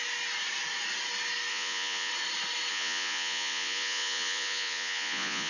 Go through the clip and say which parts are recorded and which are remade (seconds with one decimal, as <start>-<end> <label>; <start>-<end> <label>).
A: 0.0-1.5 recorded; 1.5-2.1 remade; 2.1-2.7 recorded; 2.7-5.5 remade